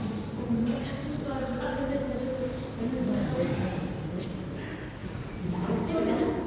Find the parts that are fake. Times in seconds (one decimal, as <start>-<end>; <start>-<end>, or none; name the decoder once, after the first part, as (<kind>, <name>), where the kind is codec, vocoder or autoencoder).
5.0-5.5 (vocoder, Vocos)